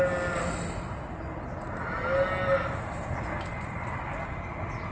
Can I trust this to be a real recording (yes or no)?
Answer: yes